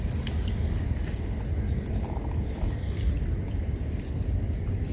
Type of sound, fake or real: real